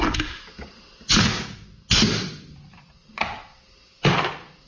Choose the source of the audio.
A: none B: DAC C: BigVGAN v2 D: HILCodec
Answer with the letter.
A